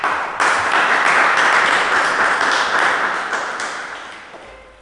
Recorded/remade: recorded